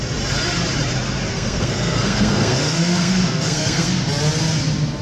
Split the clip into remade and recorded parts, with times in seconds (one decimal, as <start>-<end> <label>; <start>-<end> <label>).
0.0-1.3 recorded; 1.3-3.9 remade; 3.9-5.0 recorded